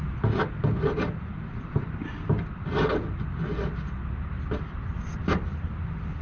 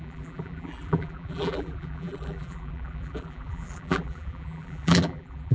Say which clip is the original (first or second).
first